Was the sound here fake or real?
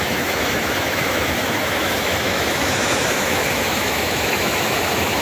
fake